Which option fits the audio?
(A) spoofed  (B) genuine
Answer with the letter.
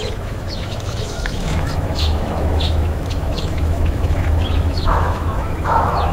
A